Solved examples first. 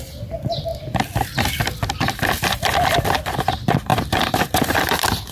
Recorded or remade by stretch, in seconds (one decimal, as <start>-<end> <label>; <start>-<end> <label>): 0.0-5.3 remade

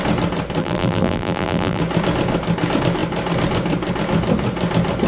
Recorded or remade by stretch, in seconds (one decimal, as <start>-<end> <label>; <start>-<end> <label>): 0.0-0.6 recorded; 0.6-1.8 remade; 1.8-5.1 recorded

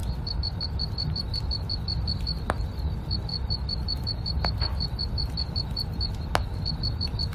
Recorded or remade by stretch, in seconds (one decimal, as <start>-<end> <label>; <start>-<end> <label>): 0.0-1.4 remade; 1.4-3.3 recorded; 3.3-6.2 remade; 6.2-7.3 recorded

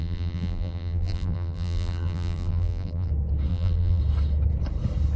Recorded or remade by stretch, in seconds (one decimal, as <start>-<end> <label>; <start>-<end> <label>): 0.0-3.1 remade; 3.1-3.5 recorded; 3.5-4.0 remade; 4.0-5.2 recorded

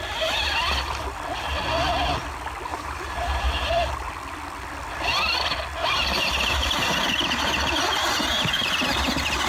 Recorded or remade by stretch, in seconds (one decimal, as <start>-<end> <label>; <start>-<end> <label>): 0.0-2.7 recorded; 2.7-3.7 remade; 3.7-9.5 recorded